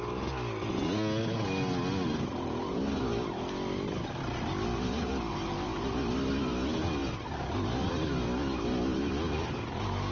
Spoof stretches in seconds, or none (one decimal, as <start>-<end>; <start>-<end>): none